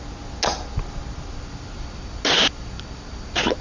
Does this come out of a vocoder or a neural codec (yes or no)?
no